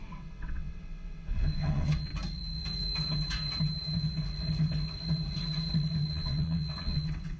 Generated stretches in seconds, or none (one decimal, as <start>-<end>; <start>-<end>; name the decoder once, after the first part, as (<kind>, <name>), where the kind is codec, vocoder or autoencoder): 0.0-2.1 (vocoder, WaveNeXt); 6.1-7.4